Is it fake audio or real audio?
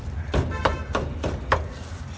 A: fake